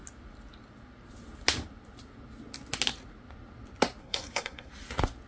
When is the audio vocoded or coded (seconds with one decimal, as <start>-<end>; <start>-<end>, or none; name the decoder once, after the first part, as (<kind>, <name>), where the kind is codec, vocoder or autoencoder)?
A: 4.0-4.7 (codec, SNAC)